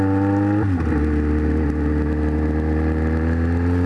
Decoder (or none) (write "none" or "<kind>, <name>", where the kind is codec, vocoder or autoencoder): none